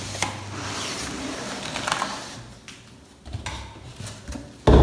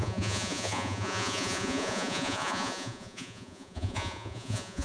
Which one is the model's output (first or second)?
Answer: second